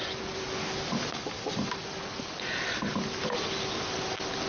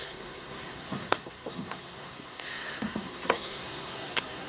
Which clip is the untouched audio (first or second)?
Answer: first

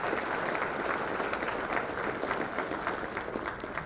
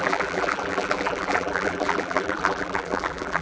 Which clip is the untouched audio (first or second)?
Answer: first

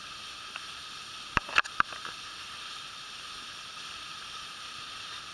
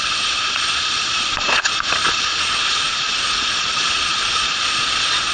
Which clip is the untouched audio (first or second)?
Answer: first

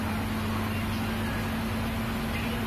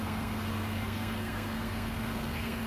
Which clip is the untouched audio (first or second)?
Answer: first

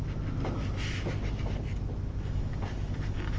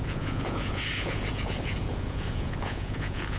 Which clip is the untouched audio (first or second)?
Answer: first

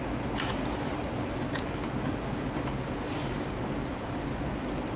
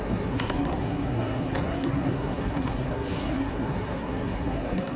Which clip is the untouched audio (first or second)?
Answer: first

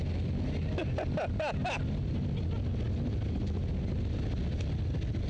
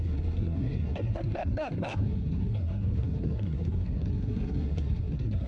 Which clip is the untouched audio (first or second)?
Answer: first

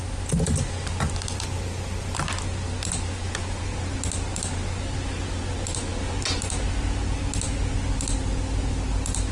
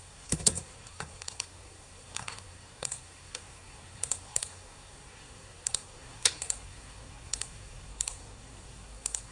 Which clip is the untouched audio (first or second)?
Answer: first